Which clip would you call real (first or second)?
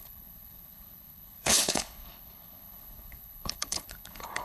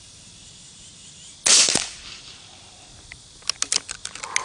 second